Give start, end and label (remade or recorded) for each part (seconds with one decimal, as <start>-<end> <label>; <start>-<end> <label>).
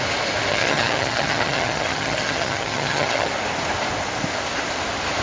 0.0-0.5 recorded; 0.5-3.3 remade; 3.3-5.2 recorded